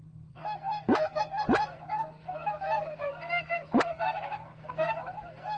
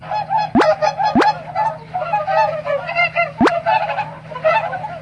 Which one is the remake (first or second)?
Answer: first